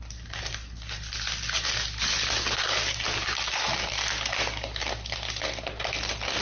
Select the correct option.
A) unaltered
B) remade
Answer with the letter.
A